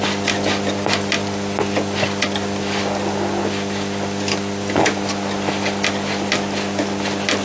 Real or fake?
real